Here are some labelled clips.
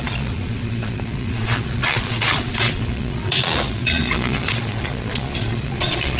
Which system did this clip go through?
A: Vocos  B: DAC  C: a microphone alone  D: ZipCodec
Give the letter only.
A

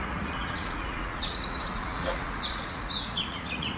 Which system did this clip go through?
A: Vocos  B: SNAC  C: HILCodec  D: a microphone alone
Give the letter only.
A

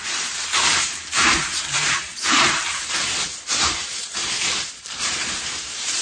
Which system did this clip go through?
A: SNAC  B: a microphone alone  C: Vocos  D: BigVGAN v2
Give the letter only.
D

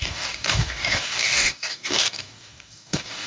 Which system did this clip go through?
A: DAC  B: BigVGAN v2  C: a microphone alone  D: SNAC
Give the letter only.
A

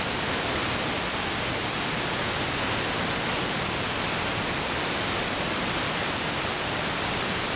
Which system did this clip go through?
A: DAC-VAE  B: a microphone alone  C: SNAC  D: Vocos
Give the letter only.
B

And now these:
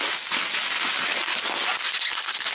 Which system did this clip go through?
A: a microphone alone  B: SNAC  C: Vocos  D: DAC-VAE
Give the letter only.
A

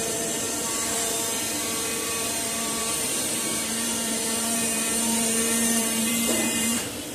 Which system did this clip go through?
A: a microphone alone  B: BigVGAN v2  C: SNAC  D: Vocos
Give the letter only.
B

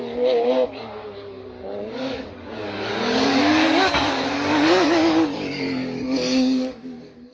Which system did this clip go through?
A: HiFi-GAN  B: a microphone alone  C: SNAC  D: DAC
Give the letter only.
D